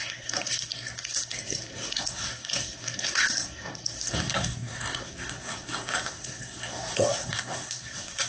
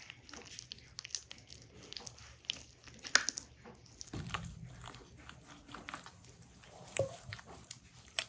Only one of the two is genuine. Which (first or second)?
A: second